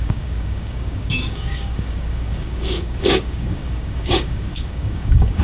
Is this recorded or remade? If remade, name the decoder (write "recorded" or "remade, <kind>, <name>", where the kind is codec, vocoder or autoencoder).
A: remade, codec, DAC